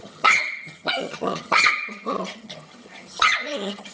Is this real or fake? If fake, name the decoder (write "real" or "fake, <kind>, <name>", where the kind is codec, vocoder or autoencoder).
fake, vocoder, HiFi-GAN